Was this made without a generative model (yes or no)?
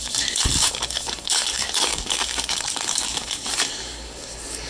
no